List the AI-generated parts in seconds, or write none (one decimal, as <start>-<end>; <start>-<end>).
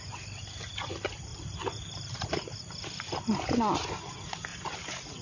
1.3-4.0; 4.5-5.2